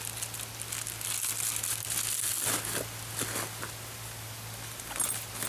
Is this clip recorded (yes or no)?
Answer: yes